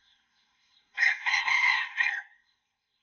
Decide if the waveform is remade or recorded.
remade